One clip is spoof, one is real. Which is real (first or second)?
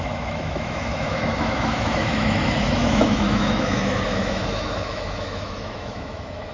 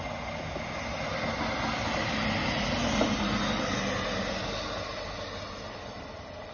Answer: second